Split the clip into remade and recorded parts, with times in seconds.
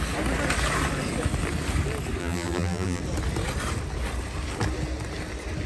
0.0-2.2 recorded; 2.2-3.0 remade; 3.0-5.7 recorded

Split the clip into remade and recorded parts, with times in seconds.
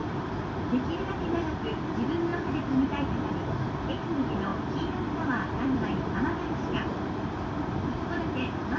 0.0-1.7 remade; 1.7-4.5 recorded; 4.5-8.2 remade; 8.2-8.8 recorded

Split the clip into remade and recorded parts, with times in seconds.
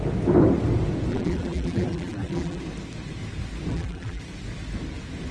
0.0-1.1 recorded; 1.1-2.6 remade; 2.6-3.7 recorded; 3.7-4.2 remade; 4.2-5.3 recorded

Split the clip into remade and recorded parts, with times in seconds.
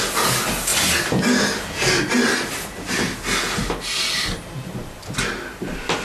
0.0-6.0 recorded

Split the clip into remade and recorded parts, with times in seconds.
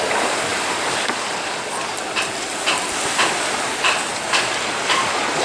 0.0-5.4 recorded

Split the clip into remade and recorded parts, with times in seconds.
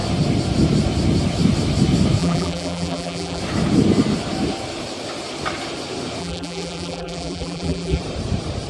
0.0-2.2 recorded; 2.2-3.4 remade; 3.4-6.2 recorded; 6.2-8.0 remade; 8.0-8.7 recorded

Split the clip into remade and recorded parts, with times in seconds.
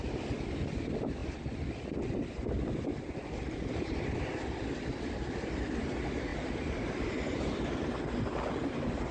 0.0-6.3 recorded; 6.3-7.9 remade; 7.9-9.1 recorded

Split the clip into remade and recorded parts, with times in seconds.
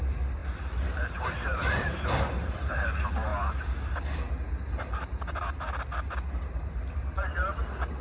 0.0-3.3 remade; 3.3-6.3 recorded; 6.3-8.0 remade